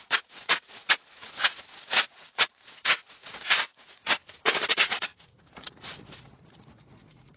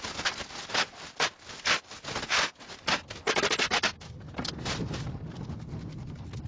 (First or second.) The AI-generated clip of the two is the first